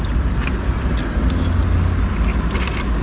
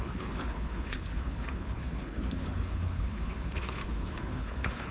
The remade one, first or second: second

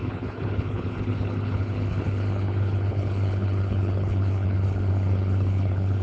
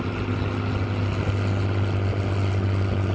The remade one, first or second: first